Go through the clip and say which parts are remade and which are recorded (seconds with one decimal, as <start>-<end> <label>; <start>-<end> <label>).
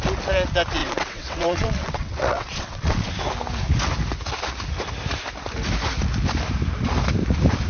0.0-0.8 recorded; 0.8-3.1 remade; 3.1-7.7 recorded